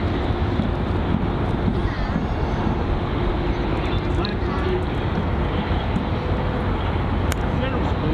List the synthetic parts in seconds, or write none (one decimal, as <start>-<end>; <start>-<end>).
1.7-2.6; 4.3-6.6